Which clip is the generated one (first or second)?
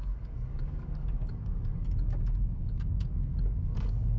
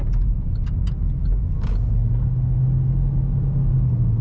first